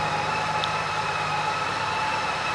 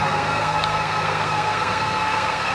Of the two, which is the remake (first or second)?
second